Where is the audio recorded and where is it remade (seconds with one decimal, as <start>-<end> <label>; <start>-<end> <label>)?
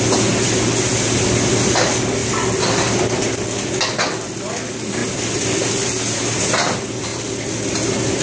0.0-8.2 recorded